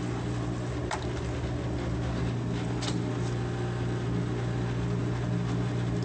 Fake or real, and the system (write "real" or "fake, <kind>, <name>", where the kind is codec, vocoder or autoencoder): real